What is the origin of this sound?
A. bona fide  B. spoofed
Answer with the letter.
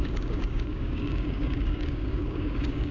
B